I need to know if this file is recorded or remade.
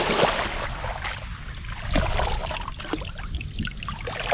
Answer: recorded